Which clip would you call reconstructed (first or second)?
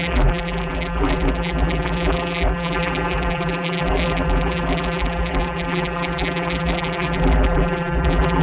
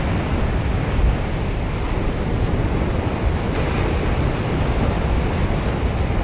first